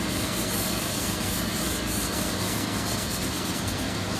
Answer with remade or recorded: remade